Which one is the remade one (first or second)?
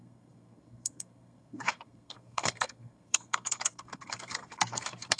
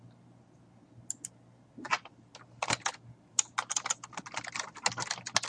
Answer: first